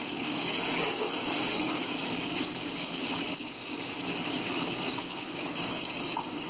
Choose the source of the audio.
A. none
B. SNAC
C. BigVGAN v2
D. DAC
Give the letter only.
D